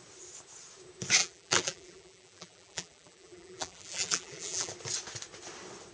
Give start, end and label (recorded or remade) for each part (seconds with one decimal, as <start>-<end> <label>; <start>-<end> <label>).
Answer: 0.0-1.2 recorded; 1.2-4.7 remade; 4.7-5.9 recorded